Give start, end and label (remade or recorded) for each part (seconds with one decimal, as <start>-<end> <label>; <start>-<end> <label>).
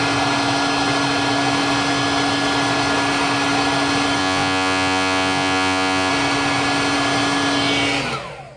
0.0-4.2 recorded; 4.2-6.1 remade; 6.1-8.6 recorded